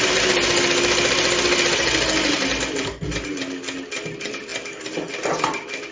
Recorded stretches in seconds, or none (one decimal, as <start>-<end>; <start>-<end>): 0.0-5.9